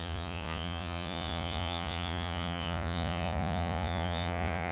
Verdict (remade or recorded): remade